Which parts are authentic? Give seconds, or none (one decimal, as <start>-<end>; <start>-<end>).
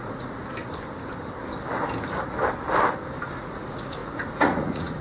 0.4-3.4